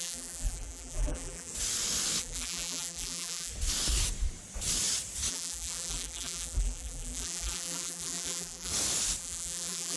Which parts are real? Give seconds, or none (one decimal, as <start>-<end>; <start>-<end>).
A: 1.5-2.2; 3.5-5.3; 8.7-9.2